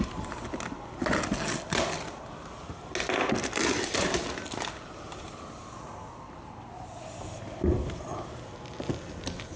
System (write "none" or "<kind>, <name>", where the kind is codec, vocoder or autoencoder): none